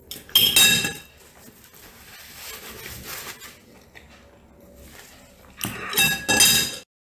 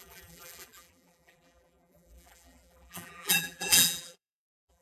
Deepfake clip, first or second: second